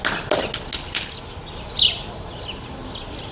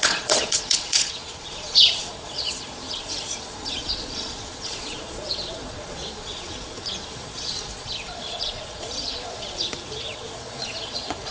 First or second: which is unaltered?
first